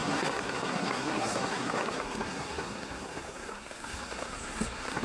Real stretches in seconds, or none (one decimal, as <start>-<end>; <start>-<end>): none